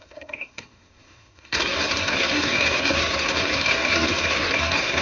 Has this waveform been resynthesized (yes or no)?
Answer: yes